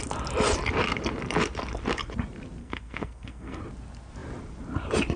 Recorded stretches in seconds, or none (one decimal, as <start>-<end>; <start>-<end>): 0.0-2.6; 3.6-5.2